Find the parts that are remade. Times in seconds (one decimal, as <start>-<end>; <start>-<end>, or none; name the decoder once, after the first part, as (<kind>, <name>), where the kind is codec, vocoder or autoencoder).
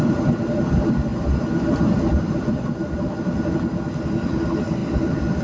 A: none